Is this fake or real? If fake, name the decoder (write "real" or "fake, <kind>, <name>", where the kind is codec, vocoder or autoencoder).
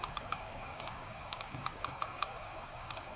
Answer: fake, codec, DAC